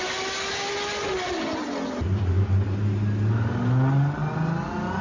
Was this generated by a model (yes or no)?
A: no